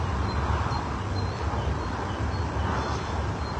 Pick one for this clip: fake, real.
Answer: real